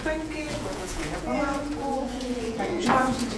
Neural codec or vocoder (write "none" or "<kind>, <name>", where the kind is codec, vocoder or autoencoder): vocoder, Vocos